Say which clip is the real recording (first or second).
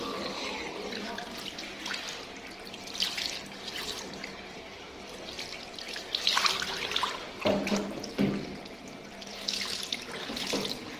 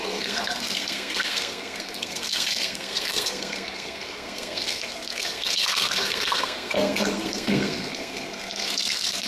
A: first